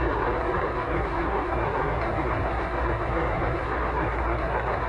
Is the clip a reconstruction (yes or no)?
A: yes